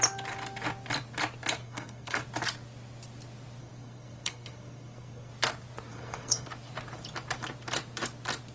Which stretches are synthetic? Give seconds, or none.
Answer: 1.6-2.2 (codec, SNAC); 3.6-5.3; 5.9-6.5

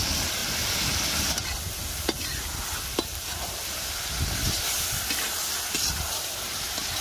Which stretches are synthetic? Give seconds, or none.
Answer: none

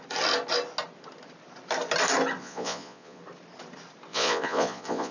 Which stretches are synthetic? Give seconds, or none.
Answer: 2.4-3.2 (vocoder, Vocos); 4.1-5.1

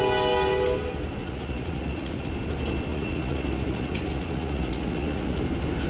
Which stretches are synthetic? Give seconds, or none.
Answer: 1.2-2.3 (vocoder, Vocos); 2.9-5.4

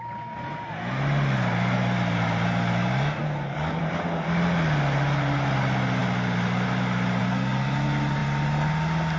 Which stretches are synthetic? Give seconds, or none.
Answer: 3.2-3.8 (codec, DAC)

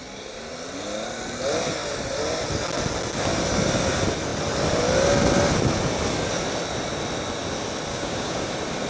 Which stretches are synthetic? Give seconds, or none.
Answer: 7.9-8.5 (codec, DAC)